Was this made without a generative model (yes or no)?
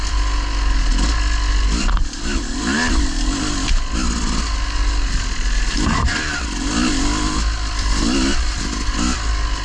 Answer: yes